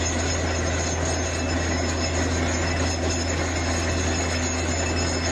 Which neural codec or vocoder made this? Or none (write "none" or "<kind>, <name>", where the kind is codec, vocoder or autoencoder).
none